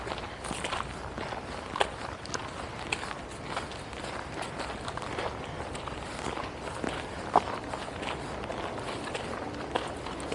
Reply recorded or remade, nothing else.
recorded